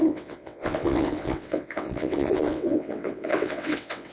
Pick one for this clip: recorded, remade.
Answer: remade